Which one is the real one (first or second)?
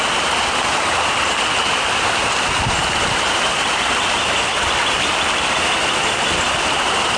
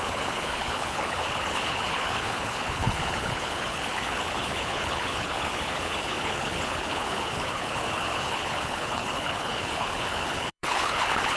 first